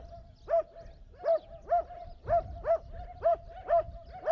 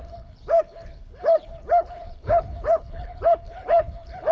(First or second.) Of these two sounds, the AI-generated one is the second